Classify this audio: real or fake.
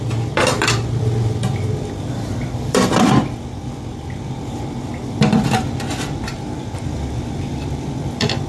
fake